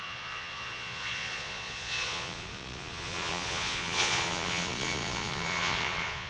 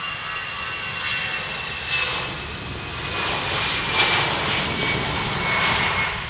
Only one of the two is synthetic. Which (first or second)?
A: first